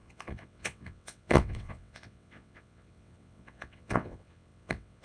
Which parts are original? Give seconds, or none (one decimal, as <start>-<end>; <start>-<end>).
none